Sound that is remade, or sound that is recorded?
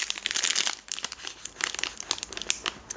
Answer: recorded